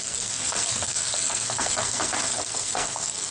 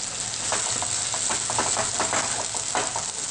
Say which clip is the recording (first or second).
second